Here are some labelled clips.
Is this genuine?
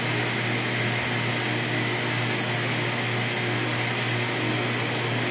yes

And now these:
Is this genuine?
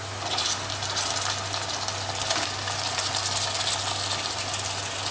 yes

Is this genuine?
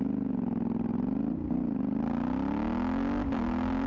yes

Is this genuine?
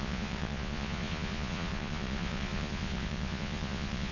no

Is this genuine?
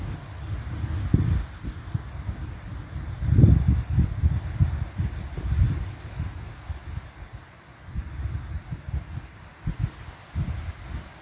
yes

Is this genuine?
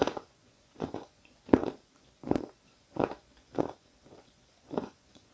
no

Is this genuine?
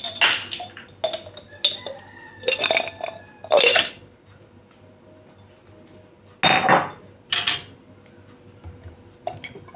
yes